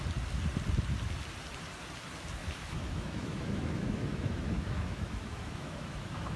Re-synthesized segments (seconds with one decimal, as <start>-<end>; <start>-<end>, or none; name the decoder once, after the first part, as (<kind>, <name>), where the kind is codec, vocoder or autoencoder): 2.4-6.4 (autoencoder, DAC-VAE)